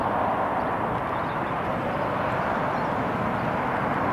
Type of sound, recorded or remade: recorded